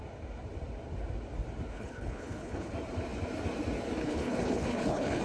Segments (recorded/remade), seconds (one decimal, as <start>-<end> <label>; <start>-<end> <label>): 0.0-1.7 recorded; 1.7-2.7 remade; 2.7-4.0 recorded; 4.0-5.2 remade